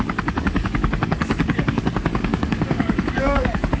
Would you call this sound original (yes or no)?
no